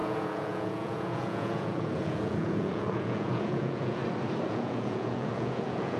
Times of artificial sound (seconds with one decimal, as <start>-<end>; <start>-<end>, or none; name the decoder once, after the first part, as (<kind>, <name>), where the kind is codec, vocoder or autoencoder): 0.0-4.0 (vocoder, Vocos); 4.5-6.0